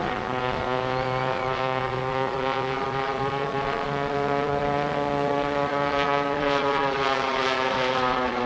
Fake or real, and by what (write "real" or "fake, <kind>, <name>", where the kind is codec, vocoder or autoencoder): fake, vocoder, Vocos